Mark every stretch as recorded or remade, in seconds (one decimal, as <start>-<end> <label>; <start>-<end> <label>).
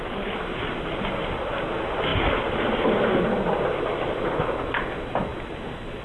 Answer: 0.0-6.0 recorded